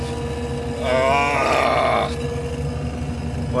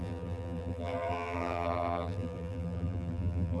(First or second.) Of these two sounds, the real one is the first